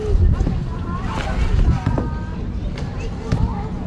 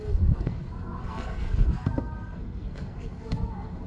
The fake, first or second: second